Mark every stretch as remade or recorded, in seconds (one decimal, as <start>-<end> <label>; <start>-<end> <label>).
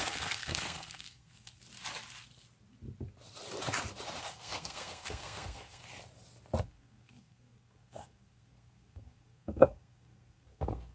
0.0-1.6 remade; 1.6-4.2 recorded; 4.2-5.8 remade; 5.8-6.6 recorded; 6.6-10.9 remade